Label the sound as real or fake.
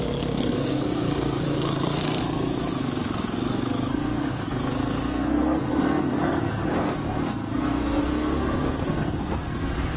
fake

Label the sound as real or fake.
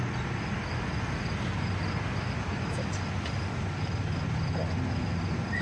real